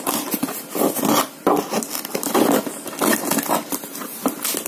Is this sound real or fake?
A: real